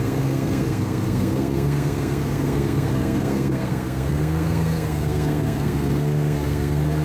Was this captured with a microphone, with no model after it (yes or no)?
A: no